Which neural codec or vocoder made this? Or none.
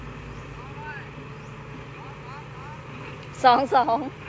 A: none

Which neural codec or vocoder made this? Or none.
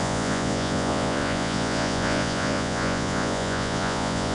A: vocoder, Vocos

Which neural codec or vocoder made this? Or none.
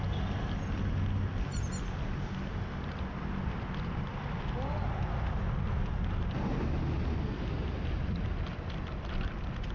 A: none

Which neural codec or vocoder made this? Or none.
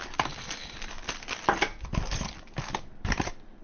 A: none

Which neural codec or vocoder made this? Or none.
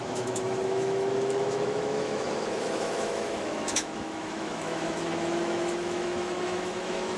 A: autoencoder, DAC-VAE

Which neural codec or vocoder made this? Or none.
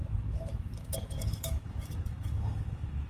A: autoencoder, DAC-VAE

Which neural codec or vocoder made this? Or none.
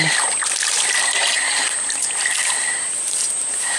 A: none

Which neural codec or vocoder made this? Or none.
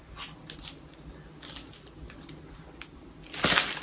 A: none